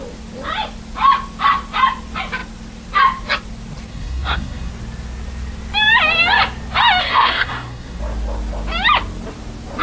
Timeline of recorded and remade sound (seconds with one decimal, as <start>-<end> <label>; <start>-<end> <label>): 0.0-3.9 recorded; 3.9-4.7 remade; 4.7-7.0 recorded; 7.0-8.0 remade; 8.0-9.8 recorded